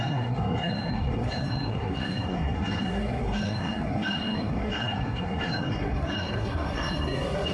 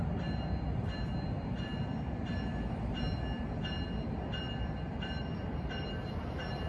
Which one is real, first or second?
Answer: second